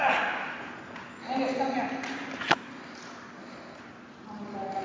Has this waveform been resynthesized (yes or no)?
no